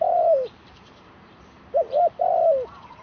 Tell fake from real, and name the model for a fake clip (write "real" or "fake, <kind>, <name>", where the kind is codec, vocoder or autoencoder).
fake, vocoder, BigVGAN v2